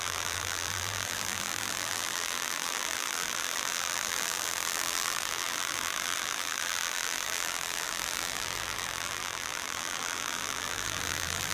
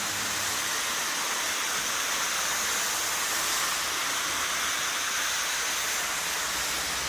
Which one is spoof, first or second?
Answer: first